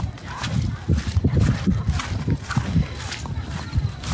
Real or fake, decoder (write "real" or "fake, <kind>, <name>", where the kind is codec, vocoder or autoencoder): real